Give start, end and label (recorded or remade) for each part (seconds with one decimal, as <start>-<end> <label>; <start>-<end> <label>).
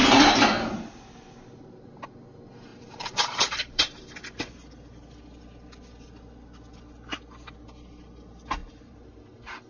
0.0-1.9 remade; 1.9-2.7 recorded; 2.7-4.2 remade; 4.2-8.6 recorded; 8.6-9.7 remade